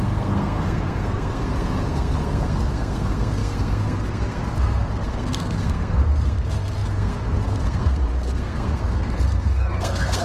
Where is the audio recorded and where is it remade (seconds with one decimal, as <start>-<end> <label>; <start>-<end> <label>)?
0.0-10.2 remade